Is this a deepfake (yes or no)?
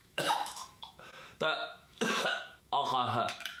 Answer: yes